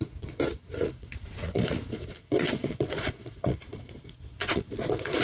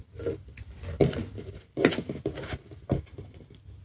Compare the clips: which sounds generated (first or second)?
first